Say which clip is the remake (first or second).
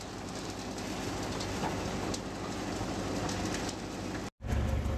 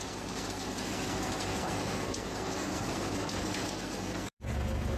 second